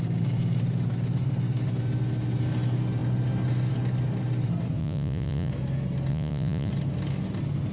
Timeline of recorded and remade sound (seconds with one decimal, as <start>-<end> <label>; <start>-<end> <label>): 0.0-4.8 recorded; 4.8-5.5 remade; 5.5-6.1 recorded; 6.1-6.7 remade; 6.7-7.7 recorded